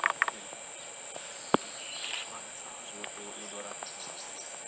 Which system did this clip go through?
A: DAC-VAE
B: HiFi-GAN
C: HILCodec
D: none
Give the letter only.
D